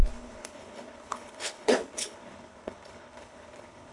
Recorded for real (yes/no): no